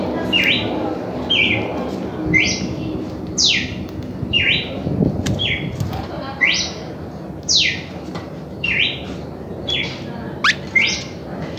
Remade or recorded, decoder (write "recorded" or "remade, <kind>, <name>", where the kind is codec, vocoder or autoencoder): recorded